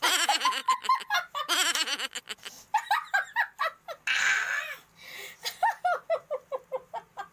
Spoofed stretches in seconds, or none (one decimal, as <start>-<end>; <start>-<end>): none